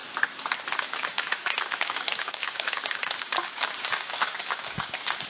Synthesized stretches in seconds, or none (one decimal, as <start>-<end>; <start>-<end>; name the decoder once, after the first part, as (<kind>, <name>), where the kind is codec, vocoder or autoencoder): 0.8-5.3 (codec, DAC)